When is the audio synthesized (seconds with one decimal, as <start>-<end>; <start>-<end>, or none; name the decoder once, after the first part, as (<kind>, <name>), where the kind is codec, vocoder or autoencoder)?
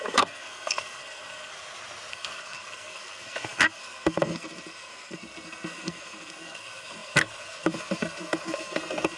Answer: 0.0-1.5 (codec, SNAC); 2.1-9.2